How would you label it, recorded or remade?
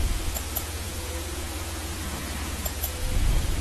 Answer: remade